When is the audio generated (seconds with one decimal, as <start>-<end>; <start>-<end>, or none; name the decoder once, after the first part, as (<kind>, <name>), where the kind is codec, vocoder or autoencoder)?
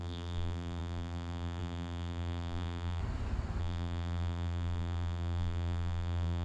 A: 0.0-3.0 (vocoder, BigVGAN v2); 3.6-6.4